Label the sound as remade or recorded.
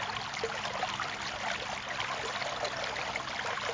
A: recorded